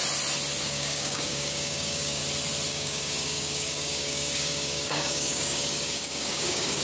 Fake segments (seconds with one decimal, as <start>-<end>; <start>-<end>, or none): 0.6-2.2; 2.7-6.8